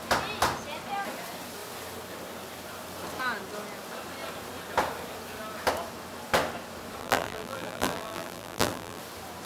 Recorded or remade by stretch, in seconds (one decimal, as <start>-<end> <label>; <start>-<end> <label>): 0.0-7.0 recorded; 7.0-9.0 remade; 9.0-9.5 recorded